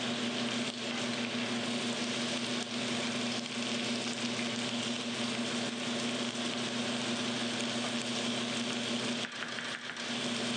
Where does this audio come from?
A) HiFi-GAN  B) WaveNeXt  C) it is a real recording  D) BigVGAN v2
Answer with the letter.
C